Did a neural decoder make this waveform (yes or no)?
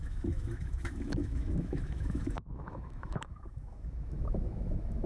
yes